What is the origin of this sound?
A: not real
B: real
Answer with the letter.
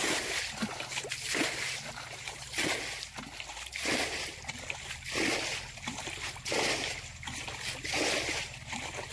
B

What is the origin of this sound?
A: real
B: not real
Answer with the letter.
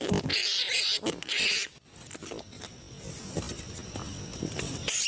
A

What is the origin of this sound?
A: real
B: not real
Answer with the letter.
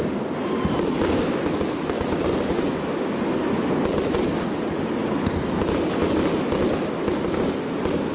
A